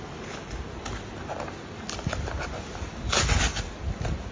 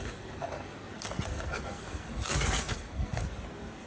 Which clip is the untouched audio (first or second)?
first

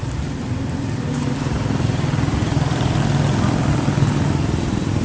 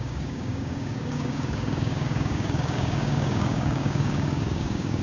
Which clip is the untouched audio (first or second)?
first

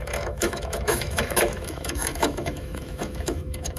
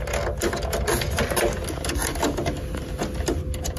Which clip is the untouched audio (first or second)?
second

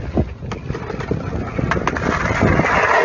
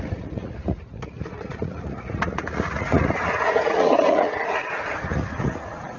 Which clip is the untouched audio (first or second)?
first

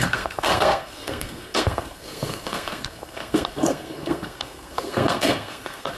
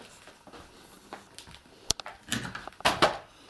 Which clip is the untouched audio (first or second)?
second